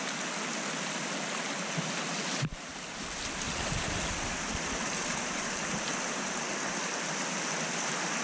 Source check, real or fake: real